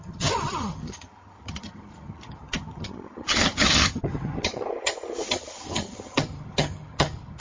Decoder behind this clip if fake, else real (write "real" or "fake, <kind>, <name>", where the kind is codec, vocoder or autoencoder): fake, vocoder, HiFi-GAN